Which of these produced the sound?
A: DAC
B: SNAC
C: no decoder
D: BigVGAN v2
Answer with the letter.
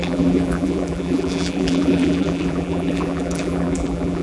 D